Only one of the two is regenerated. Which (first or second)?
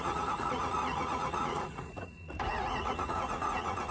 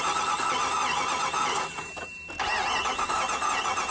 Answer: first